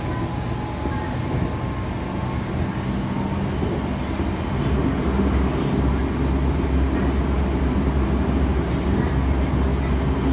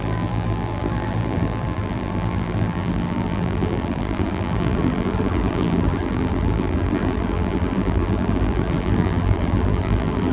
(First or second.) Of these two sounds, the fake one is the second